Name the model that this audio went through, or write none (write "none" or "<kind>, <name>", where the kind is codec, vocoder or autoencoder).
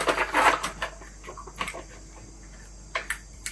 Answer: none